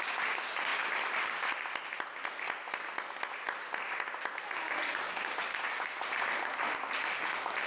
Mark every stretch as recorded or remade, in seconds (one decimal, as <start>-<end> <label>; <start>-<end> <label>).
0.0-7.7 recorded